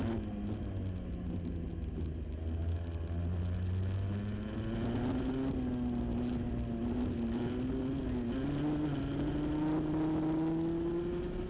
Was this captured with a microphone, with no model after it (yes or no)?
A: yes